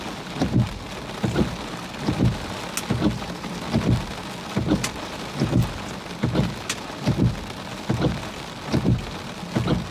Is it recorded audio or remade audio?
recorded